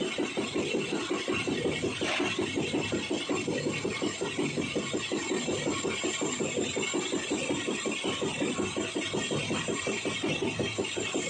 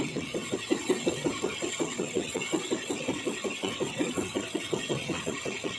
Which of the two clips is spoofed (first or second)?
second